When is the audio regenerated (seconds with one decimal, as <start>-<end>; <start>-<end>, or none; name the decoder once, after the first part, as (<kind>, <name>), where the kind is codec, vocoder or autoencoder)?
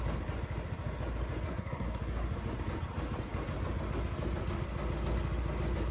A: 1.5-2.0 (codec, SNAC)